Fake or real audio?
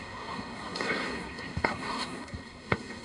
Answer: fake